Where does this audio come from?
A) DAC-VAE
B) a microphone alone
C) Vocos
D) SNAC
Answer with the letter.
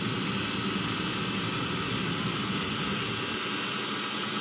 B